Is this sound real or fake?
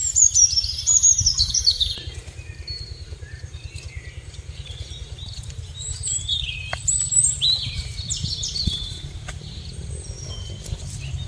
fake